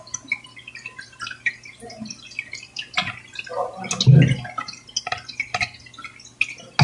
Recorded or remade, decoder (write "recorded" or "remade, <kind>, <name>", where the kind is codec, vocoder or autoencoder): recorded